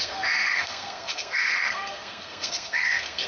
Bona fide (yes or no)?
no